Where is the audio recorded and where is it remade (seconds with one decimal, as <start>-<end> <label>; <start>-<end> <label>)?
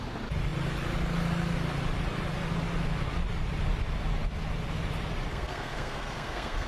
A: 0.0-5.3 recorded; 5.3-6.7 remade